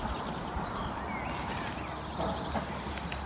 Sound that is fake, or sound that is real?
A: real